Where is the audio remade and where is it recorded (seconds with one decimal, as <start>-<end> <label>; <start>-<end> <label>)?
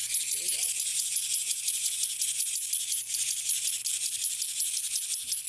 0.0-0.9 recorded; 0.9-2.5 remade; 2.5-5.5 recorded